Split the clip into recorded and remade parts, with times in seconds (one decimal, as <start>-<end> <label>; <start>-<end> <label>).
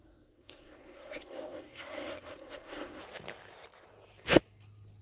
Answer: 0.0-3.0 remade; 3.0-5.0 recorded